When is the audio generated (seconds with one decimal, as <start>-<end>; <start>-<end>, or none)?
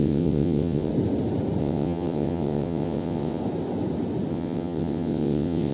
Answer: 0.0-0.9; 1.6-3.4; 4.3-5.7